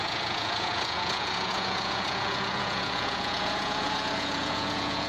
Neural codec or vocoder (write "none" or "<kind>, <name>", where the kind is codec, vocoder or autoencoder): vocoder, Vocos